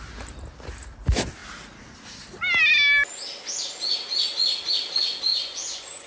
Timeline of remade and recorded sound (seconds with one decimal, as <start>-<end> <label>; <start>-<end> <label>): 0.0-5.3 recorded; 5.3-6.1 remade